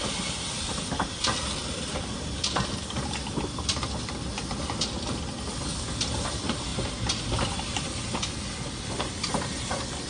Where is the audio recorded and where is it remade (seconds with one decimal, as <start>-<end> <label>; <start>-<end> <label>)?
0.0-10.1 recorded